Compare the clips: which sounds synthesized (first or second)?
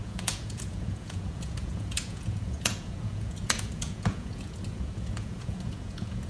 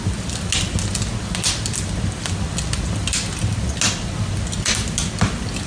first